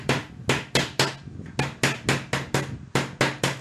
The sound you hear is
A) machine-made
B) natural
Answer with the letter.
B